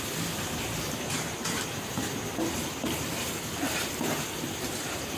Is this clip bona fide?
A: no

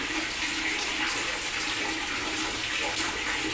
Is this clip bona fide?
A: yes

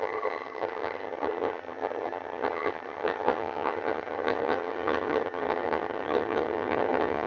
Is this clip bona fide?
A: no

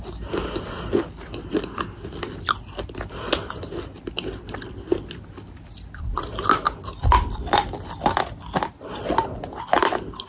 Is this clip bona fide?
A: yes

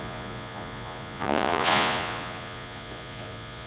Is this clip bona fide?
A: no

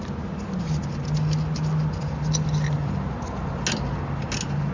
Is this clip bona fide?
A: yes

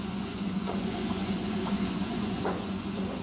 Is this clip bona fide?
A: no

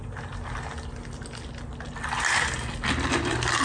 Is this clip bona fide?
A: yes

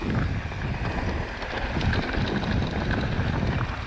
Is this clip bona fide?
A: yes